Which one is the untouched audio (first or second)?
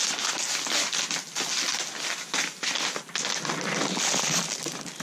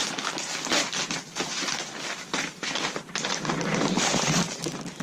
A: first